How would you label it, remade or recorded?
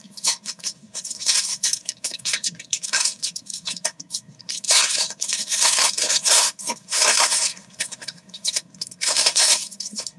remade